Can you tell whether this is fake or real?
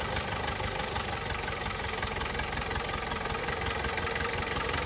real